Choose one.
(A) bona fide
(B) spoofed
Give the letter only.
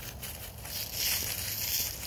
A